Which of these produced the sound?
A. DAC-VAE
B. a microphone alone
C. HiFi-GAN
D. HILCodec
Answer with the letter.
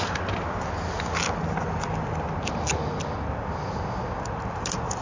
B